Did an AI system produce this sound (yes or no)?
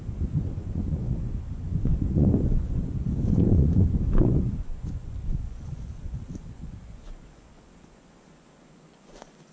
yes